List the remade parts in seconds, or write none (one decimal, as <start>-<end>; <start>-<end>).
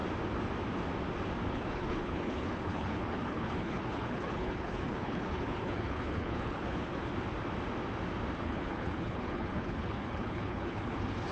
1.5-7.1; 8.4-11.3